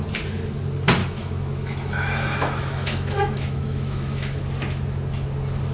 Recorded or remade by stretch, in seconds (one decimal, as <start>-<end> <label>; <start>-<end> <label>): 0.0-1.0 recorded; 1.0-4.4 remade; 4.4-5.7 recorded